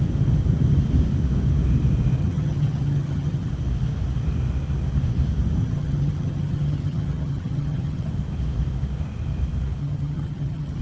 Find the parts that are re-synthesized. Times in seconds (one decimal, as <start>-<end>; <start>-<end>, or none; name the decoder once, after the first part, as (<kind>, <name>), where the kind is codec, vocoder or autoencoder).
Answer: 2.2-3.5 (vocoder, HiFi-GAN); 5.6-8.1; 9.8-10.8

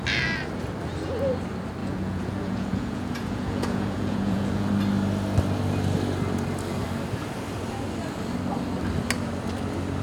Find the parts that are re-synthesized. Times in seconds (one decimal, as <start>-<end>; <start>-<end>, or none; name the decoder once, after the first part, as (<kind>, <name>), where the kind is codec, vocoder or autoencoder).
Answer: 1.8-4.7 (vocoder, Vocos)

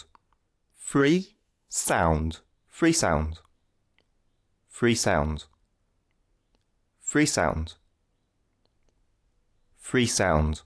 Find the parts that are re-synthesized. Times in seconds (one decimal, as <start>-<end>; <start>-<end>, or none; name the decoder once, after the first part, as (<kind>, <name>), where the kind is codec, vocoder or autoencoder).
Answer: 1.0-1.7 (codec, SNAC)

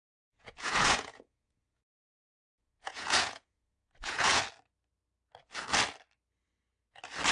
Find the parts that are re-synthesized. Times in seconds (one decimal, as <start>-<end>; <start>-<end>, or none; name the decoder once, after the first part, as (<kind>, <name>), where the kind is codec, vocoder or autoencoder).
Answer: 0.0-4.4 (vocoder, Vocos)

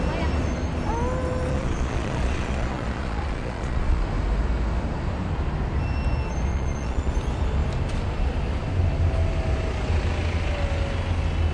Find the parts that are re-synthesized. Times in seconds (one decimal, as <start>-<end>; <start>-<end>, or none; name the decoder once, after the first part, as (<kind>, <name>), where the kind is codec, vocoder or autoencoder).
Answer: 1.5-4.0 (vocoder, Vocos); 6.5-7.1

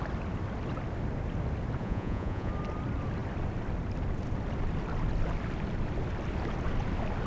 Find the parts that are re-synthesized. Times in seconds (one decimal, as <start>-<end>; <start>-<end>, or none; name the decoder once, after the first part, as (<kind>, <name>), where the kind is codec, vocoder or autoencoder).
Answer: 1.8-2.5 (vocoder, Vocos)

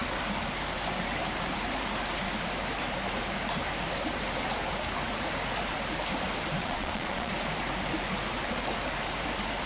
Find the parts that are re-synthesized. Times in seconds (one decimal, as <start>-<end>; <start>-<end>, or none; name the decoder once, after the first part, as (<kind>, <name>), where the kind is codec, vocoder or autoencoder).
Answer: 6.6-7.3 (vocoder, Vocos)

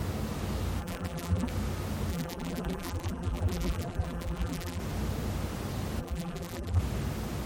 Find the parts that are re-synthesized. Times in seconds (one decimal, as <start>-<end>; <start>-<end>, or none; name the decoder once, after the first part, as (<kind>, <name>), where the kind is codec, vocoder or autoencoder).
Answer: 0.8-1.5 (vocoder, BigVGAN v2); 2.1-4.8; 6.0-6.8